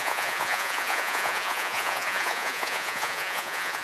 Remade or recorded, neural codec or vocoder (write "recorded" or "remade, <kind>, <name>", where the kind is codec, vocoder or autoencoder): remade, vocoder, Vocos